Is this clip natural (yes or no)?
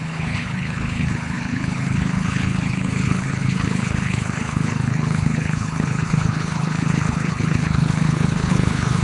no